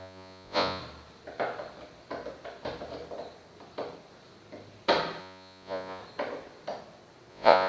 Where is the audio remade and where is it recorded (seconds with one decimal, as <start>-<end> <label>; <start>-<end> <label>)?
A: 0.0-0.8 remade; 0.8-5.2 recorded; 5.2-6.0 remade; 6.0-7.3 recorded; 7.3-7.7 remade